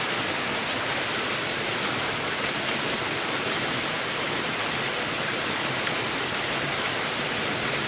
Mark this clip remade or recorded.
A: recorded